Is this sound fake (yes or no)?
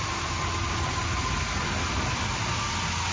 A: no